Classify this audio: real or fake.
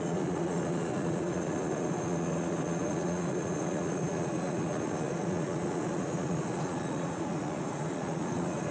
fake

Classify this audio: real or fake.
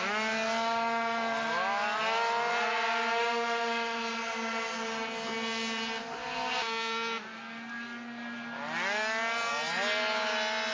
real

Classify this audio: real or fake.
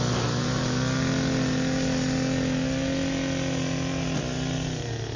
real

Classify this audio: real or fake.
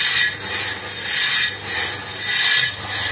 real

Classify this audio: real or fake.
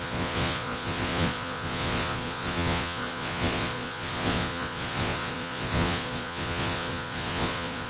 fake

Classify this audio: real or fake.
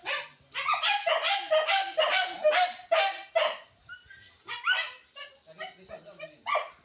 real